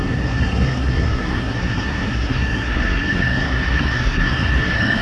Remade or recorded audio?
remade